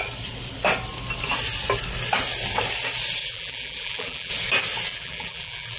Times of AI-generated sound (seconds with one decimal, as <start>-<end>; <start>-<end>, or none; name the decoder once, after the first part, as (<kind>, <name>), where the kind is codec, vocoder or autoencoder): 3.2-4.3 (vocoder, BigVGAN v2); 4.9-5.8